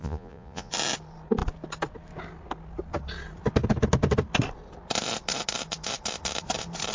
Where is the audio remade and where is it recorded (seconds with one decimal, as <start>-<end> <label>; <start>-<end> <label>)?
0.0-0.7 remade; 0.7-6.9 recorded